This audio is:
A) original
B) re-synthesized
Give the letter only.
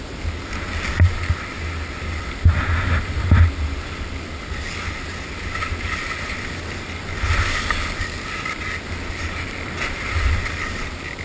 A